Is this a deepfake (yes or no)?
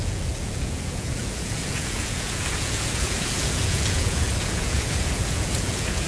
yes